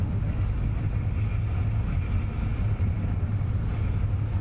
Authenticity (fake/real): real